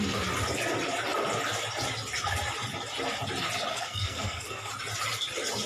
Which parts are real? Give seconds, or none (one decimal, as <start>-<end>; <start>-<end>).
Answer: 0.0-3.7; 4.7-5.7

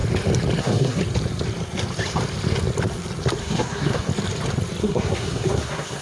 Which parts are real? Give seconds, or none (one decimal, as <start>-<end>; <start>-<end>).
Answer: 0.0-0.6; 1.0-3.4; 4.1-4.8